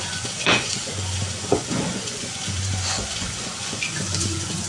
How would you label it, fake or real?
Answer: fake